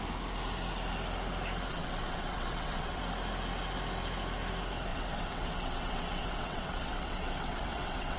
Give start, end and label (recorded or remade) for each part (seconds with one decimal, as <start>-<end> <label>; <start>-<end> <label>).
0.0-1.7 recorded; 1.7-3.0 remade; 3.0-4.9 recorded; 4.9-8.2 remade

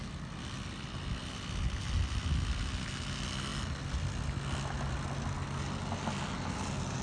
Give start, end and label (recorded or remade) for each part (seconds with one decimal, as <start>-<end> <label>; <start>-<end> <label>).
0.0-7.0 recorded

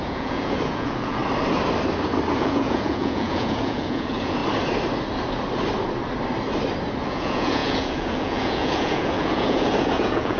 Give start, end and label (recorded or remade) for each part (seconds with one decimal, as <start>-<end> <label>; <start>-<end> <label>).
0.0-1.2 remade; 1.2-2.4 recorded; 2.4-4.4 remade; 4.4-7.1 recorded; 7.1-10.4 remade

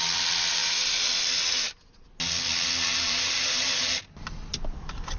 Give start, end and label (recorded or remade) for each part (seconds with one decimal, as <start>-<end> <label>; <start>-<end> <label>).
0.0-2.9 recorded; 2.9-4.0 remade; 4.0-5.2 recorded

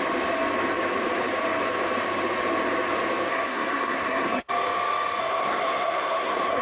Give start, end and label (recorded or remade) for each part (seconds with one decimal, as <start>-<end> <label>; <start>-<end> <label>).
0.0-3.3 recorded; 3.3-4.5 remade; 4.5-5.2 recorded; 5.2-6.6 remade